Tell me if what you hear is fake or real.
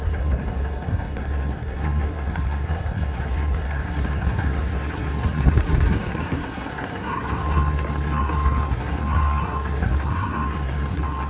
fake